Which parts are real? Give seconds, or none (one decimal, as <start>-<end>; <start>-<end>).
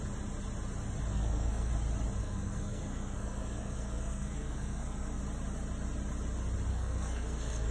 0.0-1.1; 1.7-2.2; 5.2-6.7